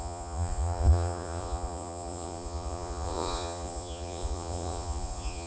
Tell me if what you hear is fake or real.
fake